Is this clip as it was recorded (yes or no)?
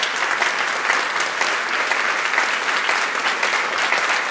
yes